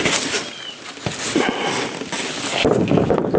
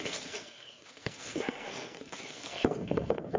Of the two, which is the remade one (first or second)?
second